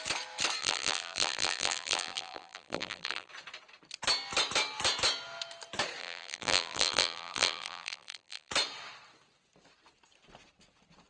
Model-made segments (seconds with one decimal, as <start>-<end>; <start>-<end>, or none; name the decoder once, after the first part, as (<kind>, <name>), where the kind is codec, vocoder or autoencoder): 0.6-3.3 (vocoder, BigVGAN v2); 6.0-8.5